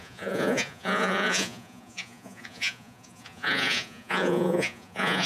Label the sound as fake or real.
fake